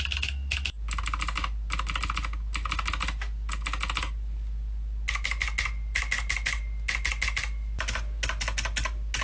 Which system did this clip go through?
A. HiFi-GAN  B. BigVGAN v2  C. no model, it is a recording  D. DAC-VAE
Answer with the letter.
C